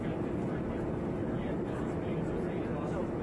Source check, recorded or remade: remade